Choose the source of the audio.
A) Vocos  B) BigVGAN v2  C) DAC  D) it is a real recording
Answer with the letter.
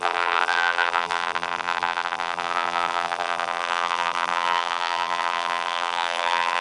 B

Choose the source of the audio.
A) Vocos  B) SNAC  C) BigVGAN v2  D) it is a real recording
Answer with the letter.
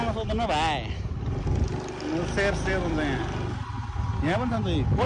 D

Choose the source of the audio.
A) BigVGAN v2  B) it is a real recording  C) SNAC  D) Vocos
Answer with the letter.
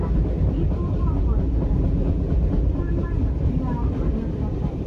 B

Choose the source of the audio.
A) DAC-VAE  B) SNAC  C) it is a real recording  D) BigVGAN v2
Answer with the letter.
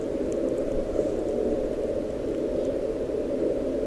C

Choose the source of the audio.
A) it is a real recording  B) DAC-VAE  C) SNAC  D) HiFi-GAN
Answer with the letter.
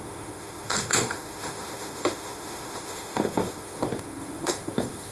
B